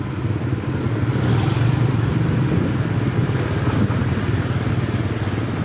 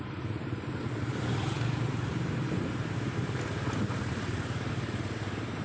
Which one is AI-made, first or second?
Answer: second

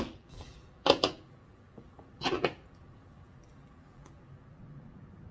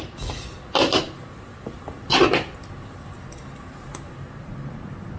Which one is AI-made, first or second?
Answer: first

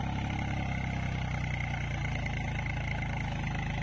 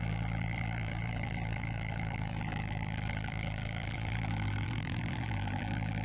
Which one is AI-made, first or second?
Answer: second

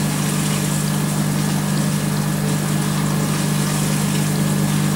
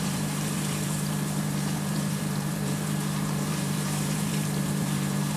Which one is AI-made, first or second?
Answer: second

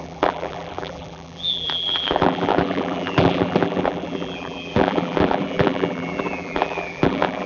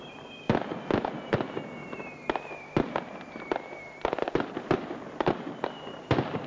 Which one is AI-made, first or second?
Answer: first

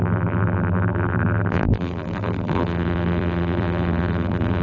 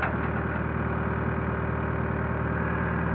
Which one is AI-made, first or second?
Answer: first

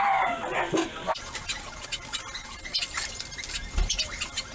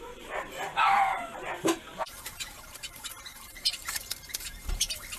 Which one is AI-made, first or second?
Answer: second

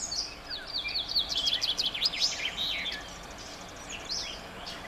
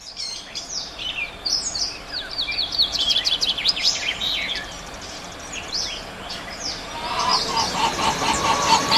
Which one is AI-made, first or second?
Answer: second